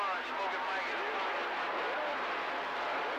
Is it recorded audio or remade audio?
recorded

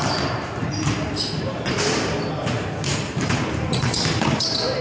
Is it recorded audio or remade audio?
remade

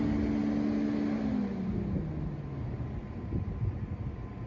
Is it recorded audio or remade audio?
recorded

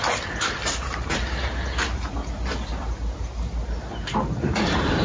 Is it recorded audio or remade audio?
recorded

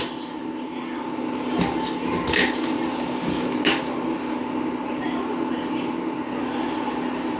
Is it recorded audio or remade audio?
recorded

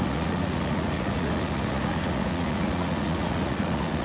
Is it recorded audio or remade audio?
remade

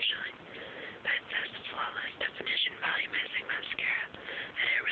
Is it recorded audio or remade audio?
recorded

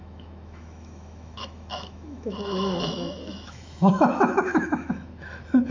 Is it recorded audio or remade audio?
remade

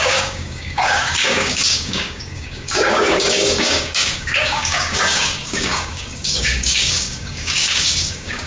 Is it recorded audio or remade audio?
remade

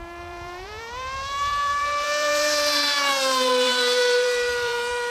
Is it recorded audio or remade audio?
remade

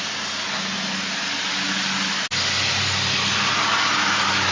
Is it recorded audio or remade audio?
recorded